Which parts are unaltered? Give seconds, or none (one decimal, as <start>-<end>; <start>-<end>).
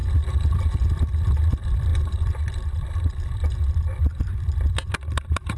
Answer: none